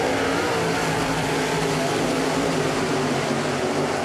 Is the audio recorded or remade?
recorded